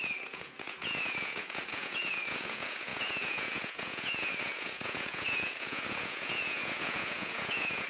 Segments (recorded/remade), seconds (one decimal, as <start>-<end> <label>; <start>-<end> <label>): 0.0-7.9 remade